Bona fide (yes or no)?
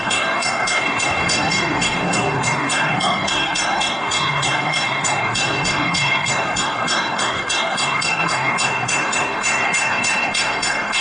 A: no